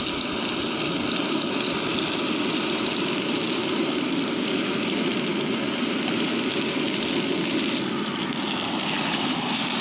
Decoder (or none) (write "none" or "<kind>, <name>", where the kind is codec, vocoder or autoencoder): none